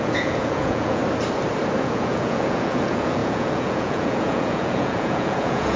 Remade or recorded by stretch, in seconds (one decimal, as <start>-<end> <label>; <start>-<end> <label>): 0.0-1.0 remade; 1.0-1.8 recorded; 1.8-5.8 remade